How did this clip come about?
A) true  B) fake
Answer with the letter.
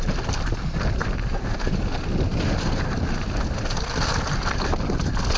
A